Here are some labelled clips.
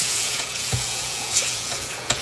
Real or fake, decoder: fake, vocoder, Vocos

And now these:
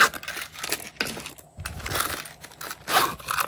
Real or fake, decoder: real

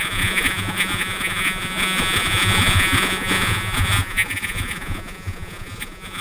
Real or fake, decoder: fake, vocoder, Vocos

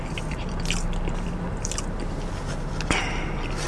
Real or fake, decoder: real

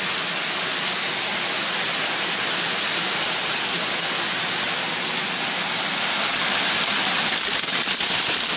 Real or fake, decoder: real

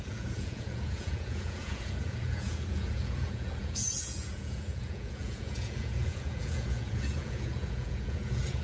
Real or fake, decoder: fake, vocoder, Vocos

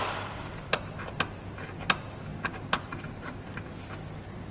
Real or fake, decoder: real